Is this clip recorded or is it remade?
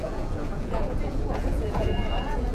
remade